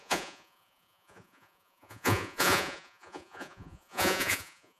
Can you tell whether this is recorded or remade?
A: remade